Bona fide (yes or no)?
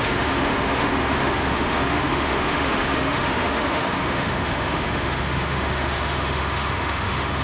no